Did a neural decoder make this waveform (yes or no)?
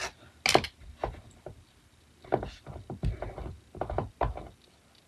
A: no